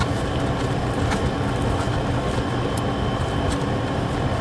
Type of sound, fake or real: real